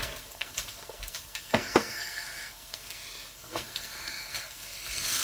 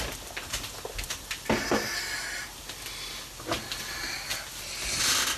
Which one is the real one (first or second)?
second